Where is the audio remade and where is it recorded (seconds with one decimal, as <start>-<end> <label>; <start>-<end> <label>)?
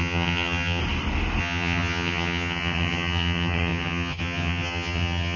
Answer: 0.0-0.8 remade; 0.8-1.4 recorded; 1.4-5.4 remade